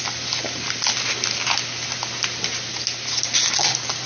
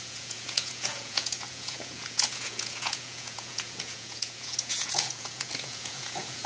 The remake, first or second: second